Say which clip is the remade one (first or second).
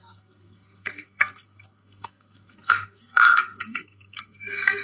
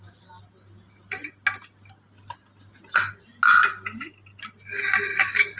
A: first